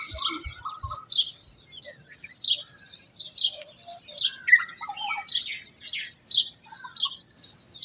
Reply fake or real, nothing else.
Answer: real